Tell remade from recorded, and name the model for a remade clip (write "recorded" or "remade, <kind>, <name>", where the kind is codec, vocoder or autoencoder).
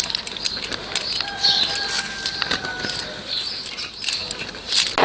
recorded